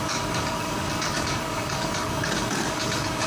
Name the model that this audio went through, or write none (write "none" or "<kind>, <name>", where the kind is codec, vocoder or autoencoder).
codec, DAC